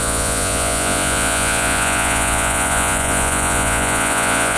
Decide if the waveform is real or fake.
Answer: fake